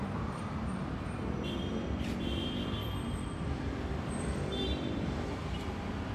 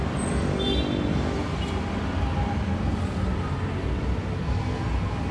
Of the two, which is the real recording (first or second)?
second